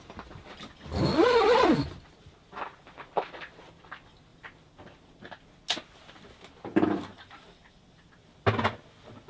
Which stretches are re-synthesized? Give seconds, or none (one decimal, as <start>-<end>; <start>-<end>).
1.1-1.7

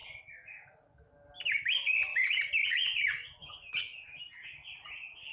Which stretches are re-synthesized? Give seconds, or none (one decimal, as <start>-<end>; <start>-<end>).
2.6-4.2

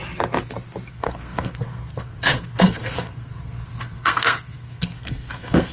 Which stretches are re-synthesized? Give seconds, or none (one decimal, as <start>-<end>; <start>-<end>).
0.9-5.7

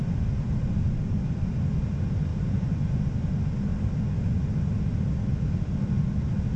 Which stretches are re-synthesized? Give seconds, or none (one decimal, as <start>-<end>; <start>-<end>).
2.3-2.8